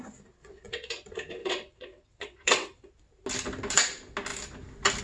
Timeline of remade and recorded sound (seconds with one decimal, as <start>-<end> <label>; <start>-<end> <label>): 0.0-0.4 recorded; 0.4-0.9 remade; 0.9-1.4 recorded; 1.4-2.9 remade; 2.9-5.0 recorded